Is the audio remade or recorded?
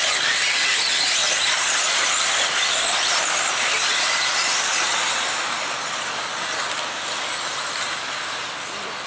recorded